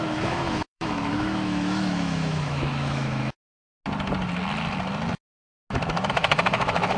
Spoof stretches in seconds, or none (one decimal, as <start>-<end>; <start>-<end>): 0.0-3.6; 6.1-7.0